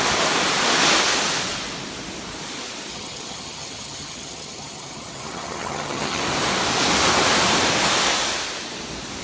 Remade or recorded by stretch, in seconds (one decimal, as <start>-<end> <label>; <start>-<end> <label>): 0.0-2.9 recorded; 2.9-6.2 remade; 6.2-9.2 recorded